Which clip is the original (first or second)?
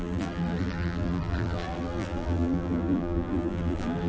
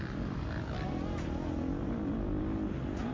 second